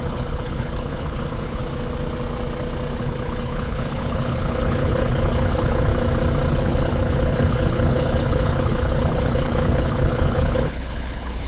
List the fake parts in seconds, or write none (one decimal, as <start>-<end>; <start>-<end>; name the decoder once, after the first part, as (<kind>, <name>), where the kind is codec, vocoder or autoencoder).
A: 0.0-1.6 (codec, HILCodec); 3.0-5.9; 6.5-11.5